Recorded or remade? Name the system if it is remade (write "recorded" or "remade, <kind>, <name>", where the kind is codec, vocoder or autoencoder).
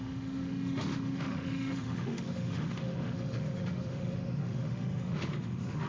remade, autoencoder, DAC-VAE